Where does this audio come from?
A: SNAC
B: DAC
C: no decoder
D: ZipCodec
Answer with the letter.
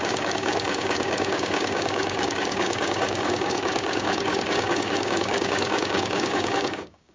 B